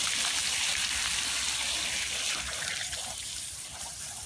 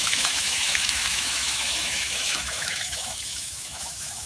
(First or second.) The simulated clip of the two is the second